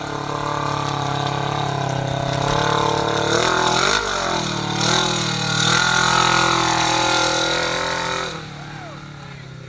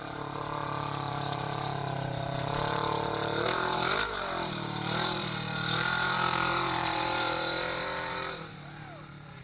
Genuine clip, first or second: first